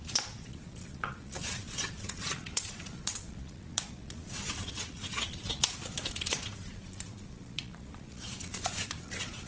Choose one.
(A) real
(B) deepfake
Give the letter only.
B